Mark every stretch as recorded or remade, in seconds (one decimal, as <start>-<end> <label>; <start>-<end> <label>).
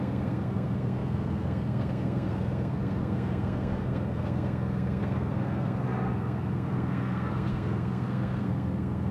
0.0-9.1 remade